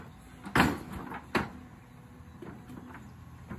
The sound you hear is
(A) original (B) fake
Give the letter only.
A